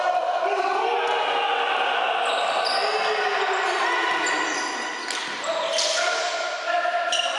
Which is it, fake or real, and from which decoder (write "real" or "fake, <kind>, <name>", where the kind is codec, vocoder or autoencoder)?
real